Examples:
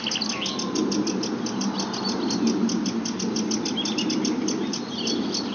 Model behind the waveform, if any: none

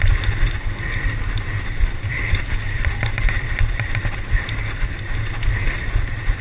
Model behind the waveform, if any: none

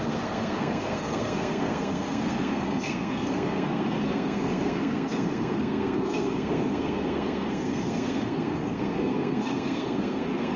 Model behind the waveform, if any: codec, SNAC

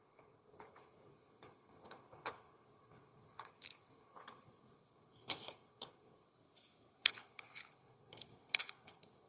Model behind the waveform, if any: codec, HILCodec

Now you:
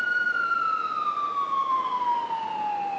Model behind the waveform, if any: none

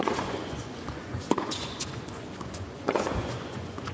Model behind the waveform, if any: vocoder, Vocos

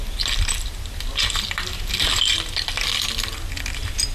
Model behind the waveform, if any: none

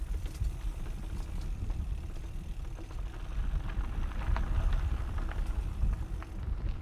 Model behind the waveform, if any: none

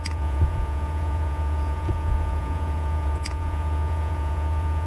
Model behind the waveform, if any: vocoder, Vocos